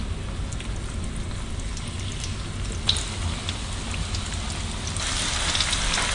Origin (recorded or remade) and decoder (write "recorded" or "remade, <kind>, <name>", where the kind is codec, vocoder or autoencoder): recorded